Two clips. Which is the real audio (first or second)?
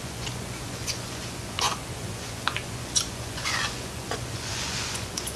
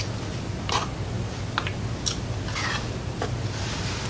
second